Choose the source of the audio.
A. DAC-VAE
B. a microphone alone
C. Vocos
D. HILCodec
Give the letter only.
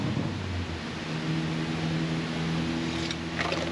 B